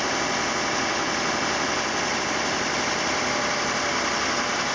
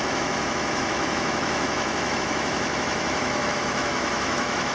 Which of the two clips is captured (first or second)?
first